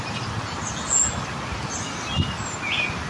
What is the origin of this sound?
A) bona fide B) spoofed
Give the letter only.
A